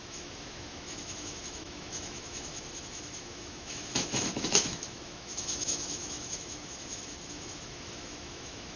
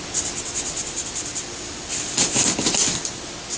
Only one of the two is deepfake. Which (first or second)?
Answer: first